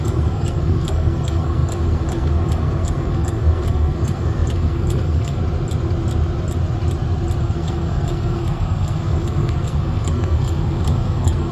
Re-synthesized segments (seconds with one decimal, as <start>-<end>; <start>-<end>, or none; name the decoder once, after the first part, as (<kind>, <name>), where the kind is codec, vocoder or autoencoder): 0.0-5.4 (codec, SNAC); 7.4-11.5